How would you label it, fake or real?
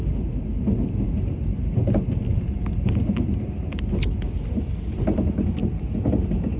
real